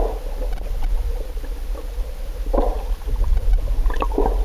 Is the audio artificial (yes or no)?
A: no